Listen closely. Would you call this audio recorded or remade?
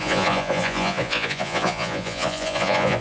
remade